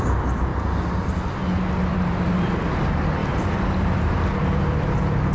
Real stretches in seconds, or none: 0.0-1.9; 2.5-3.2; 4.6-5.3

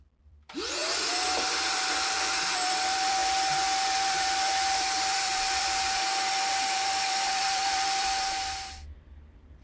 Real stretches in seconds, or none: none

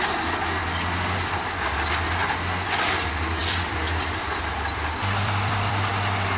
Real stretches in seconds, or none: 0.0-3.4; 5.9-6.4

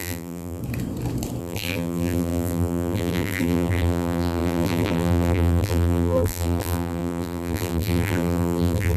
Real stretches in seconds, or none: 0.6-1.4

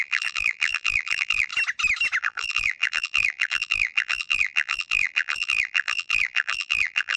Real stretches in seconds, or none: 1.5-2.2

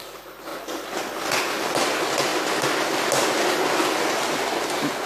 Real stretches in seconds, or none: 0.0-0.5; 1.4-5.1